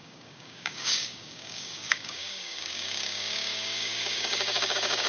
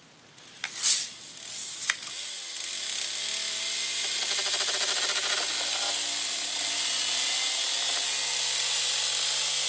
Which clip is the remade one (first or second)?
first